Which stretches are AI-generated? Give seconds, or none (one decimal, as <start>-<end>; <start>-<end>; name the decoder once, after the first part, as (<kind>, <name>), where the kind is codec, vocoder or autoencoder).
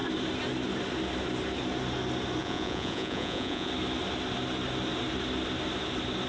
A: 2.4-3.7 (vocoder, Vocos)